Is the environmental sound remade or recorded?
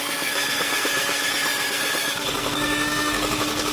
remade